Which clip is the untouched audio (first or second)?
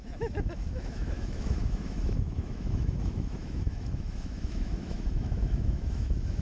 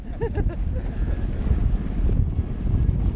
second